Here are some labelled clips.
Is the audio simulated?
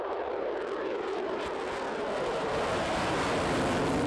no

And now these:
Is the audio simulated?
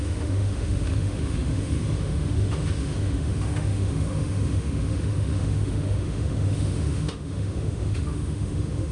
yes